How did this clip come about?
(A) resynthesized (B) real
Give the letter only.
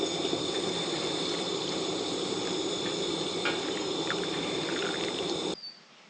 B